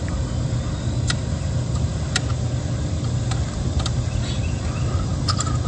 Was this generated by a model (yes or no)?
no